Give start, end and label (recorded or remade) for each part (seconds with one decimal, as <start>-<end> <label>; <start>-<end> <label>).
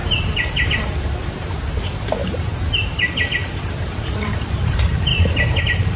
0.0-1.7 recorded; 1.7-6.0 remade